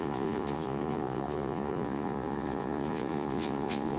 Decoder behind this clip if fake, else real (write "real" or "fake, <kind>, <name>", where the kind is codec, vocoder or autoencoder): fake, vocoder, Vocos